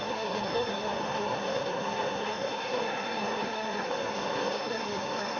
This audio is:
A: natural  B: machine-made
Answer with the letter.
B